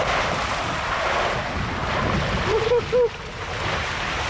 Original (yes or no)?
yes